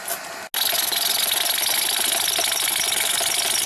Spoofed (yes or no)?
no